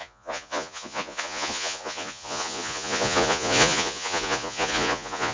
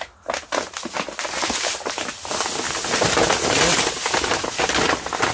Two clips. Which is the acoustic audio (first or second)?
second